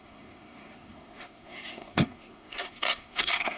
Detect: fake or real fake